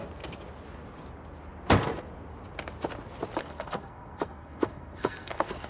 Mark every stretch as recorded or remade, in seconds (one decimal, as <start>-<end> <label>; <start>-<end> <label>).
0.0-3.4 recorded; 3.4-5.7 remade